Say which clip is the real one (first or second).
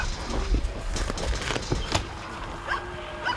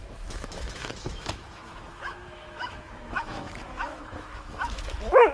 first